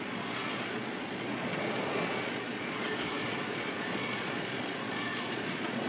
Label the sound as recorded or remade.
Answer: remade